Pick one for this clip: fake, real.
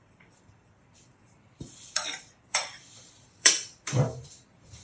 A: fake